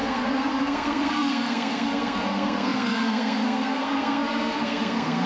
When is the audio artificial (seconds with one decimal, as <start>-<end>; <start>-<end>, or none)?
0.0-5.3